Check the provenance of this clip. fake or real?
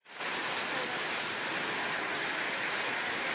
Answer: real